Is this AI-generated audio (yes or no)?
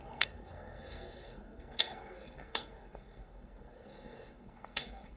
yes